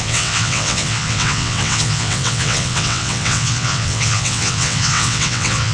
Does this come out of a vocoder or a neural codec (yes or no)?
yes